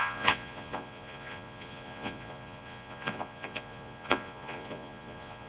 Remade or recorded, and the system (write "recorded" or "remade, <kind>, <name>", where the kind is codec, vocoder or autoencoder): remade, vocoder, Vocos